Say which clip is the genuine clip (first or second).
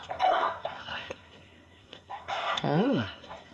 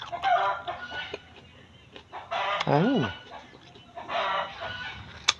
second